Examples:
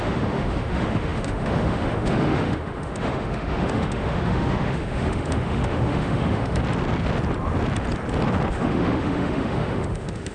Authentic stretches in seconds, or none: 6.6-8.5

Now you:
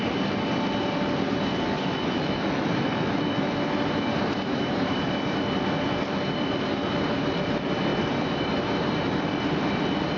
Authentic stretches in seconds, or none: 0.0-1.5; 3.5-10.2

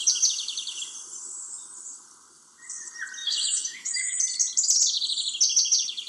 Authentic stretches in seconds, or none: 0.0-3.2; 4.2-6.1

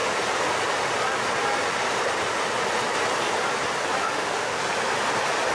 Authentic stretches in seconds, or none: 0.0-4.0; 4.6-5.5

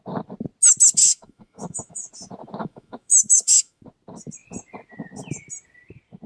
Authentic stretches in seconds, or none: 0.0-1.0; 2.1-2.6; 3.8-6.3

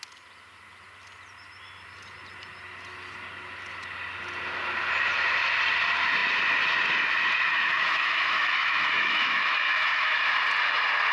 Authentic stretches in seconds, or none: 0.0-7.5; 10.2-11.1